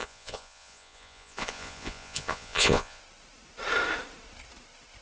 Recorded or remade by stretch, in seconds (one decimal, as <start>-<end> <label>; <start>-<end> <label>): 0.0-3.0 remade; 3.0-5.0 recorded